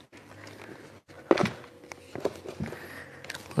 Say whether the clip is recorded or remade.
recorded